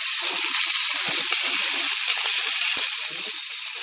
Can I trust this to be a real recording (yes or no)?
yes